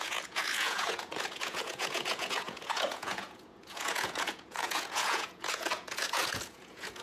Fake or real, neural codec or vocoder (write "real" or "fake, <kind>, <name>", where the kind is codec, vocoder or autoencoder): fake, vocoder, Vocos